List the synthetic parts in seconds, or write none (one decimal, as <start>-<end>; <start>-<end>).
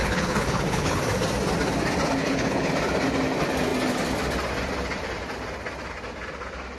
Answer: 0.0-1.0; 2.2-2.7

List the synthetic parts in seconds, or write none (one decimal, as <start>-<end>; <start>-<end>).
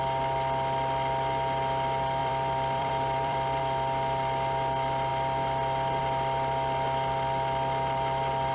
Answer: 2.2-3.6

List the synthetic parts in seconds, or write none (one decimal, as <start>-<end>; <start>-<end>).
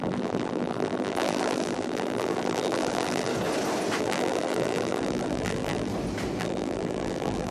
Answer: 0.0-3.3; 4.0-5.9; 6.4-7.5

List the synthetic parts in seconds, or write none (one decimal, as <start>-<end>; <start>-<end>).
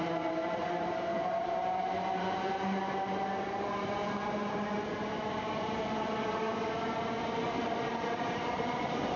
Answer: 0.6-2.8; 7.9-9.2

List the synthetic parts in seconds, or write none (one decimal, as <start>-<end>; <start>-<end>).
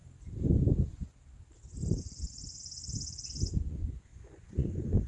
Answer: 2.0-2.8; 3.4-5.1